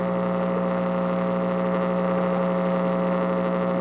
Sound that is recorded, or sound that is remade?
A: recorded